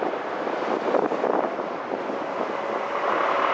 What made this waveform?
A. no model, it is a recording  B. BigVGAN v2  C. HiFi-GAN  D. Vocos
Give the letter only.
A